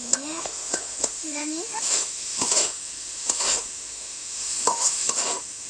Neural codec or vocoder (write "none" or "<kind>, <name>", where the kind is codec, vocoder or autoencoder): autoencoder, DAC-VAE